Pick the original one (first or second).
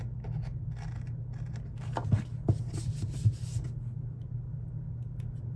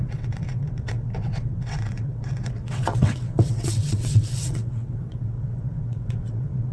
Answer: first